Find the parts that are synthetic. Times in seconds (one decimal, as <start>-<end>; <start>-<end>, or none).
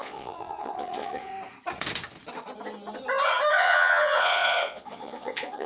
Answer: 0.0-1.3; 3.5-5.7